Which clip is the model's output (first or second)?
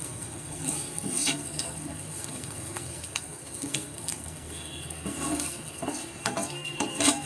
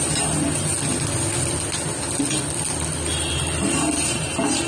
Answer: first